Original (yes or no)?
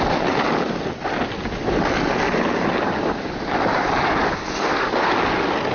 yes